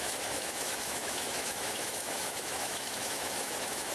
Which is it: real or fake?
fake